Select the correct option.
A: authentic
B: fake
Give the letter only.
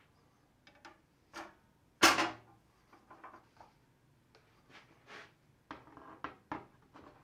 A